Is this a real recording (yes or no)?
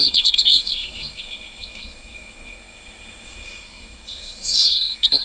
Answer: no